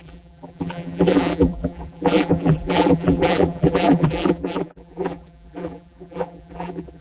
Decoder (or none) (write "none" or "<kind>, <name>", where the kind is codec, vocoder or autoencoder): vocoder, BigVGAN v2